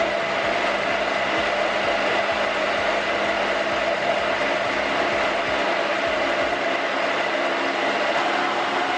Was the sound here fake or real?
real